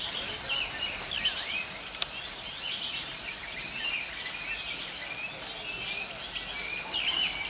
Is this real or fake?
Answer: real